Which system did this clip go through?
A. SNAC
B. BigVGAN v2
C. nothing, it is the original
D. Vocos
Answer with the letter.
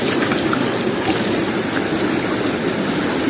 C